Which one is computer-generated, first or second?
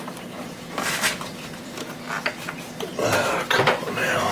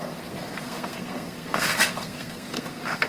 second